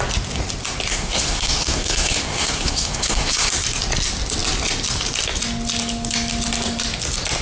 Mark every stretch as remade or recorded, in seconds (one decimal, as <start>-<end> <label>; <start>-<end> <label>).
0.0-0.9 recorded; 0.9-3.5 remade; 3.5-7.4 recorded

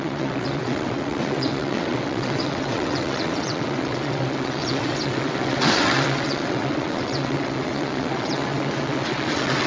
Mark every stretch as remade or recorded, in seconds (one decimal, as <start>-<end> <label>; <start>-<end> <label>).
0.0-9.7 remade

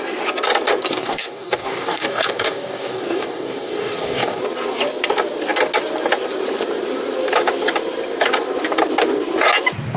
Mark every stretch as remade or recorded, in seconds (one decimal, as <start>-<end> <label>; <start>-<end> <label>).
0.0-0.9 recorded; 0.9-4.4 remade; 4.4-10.0 recorded